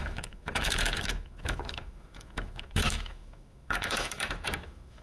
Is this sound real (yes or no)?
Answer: no